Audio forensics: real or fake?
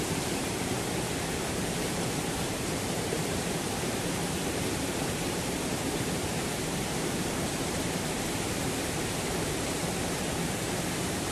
fake